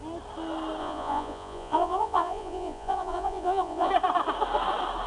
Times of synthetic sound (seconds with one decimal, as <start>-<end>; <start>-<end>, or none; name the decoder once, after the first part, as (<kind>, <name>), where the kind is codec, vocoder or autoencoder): 0.8-3.9 (vocoder, Vocos)